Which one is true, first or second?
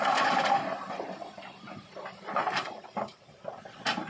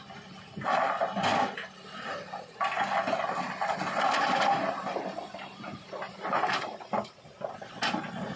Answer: second